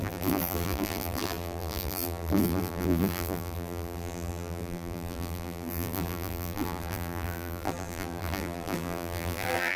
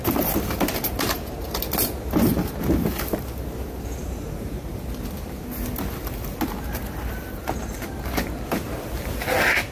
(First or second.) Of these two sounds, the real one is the second